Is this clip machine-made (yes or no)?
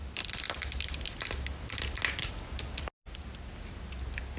no